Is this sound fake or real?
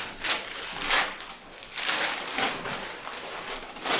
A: real